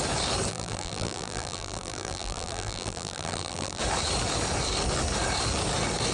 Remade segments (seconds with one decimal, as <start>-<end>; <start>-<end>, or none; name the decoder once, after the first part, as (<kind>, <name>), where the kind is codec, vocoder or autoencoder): 0.5-3.8 (vocoder, BigVGAN v2)

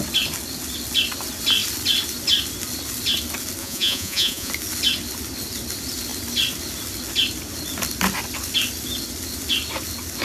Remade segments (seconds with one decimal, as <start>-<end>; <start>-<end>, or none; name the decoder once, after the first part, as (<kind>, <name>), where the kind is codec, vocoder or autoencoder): 3.6-4.5 (vocoder, Vocos)